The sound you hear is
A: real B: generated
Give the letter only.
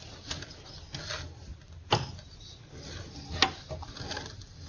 A